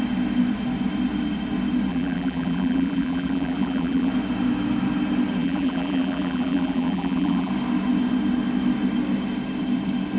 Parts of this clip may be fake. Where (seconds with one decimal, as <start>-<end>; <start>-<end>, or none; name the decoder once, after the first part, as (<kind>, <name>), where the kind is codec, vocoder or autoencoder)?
1.9-4.1 (vocoder, BigVGAN v2); 5.4-7.5